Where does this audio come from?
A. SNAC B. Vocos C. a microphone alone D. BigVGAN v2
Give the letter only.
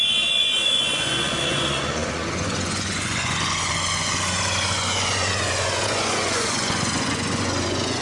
B